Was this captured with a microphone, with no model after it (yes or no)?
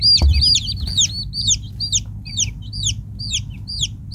yes